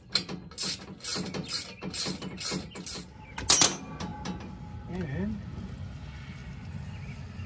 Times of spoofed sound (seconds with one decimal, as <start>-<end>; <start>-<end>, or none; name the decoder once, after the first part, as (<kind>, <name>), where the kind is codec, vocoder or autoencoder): none